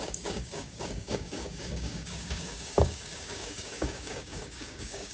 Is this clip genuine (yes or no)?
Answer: no